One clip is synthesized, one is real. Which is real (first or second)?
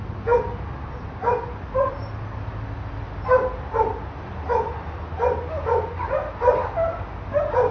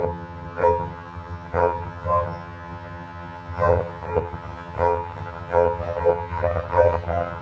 first